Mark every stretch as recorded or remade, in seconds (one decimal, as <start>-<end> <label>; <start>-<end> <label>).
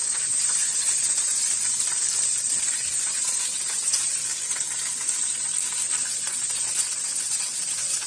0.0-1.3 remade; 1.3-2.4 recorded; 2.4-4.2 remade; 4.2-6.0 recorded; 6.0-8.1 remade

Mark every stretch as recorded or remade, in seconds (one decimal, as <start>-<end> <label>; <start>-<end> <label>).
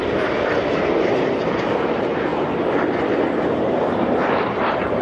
0.0-1.4 recorded; 1.4-5.0 remade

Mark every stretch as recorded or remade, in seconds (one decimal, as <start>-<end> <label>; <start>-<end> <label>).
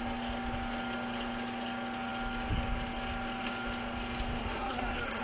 0.0-4.4 recorded; 4.4-5.2 remade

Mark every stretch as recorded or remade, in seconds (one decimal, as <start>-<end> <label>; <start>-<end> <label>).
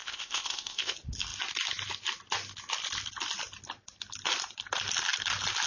0.0-0.9 remade; 0.9-5.7 recorded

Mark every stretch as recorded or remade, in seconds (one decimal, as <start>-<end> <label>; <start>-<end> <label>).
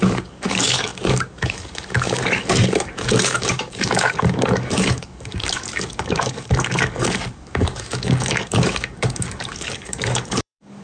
0.0-10.8 remade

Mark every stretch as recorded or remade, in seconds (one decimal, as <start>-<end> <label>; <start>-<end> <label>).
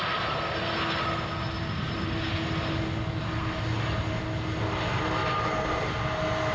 0.0-6.5 recorded